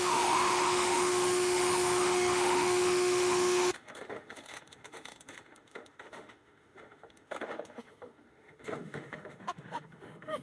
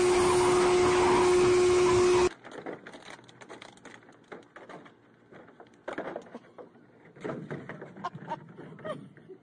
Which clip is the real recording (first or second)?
second